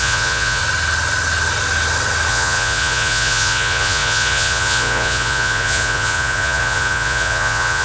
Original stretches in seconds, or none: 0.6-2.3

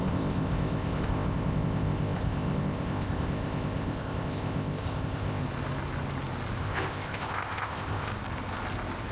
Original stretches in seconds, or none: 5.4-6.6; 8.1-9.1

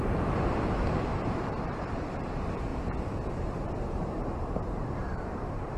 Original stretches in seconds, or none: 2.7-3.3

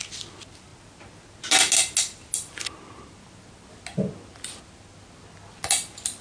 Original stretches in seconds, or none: 0.0-6.2

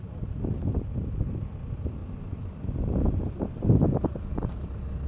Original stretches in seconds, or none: 0.0-5.1